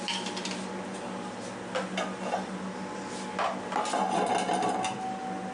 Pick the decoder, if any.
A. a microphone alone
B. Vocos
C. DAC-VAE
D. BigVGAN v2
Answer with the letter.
A